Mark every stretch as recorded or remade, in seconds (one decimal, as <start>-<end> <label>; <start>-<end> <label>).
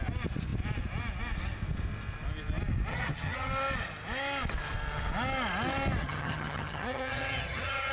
0.0-2.9 recorded; 2.9-3.5 remade; 3.5-6.0 recorded; 6.0-7.9 remade